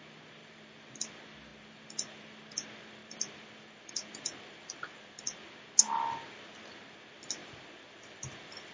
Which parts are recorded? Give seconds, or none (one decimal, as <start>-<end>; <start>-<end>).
0.0-0.4; 1.1-1.5; 2.2-3.0; 5.5-7.4